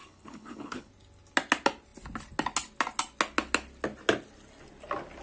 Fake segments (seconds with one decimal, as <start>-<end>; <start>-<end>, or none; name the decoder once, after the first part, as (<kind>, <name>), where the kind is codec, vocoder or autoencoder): 0.0-0.9 (codec, HILCodec)